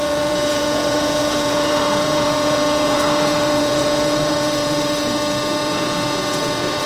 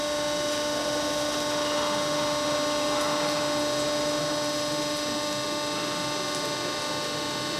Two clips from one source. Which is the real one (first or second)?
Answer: second